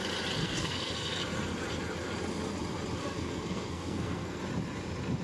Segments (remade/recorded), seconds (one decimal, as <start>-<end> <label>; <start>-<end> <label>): 0.0-0.4 recorded; 0.4-1.2 remade; 1.2-3.0 recorded; 3.0-4.4 remade; 4.4-5.2 recorded